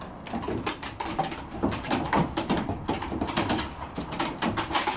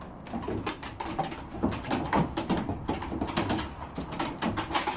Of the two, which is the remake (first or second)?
first